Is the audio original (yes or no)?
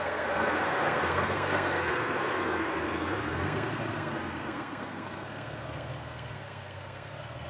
no